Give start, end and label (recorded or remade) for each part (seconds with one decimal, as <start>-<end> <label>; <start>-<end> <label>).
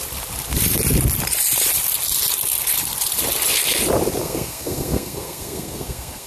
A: 0.0-4.2 recorded; 4.2-6.3 remade